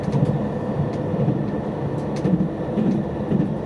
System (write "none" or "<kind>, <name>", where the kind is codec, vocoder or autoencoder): none